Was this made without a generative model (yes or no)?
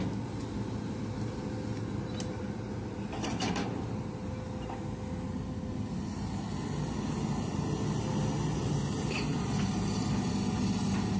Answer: yes